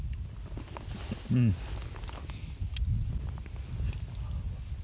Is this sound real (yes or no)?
yes